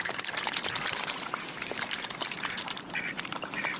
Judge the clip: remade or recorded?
remade